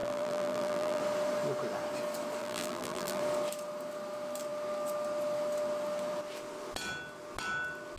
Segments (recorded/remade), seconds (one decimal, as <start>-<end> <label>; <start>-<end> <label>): 0.0-1.0 remade; 1.0-2.4 recorded; 2.4-3.2 remade; 3.2-8.0 recorded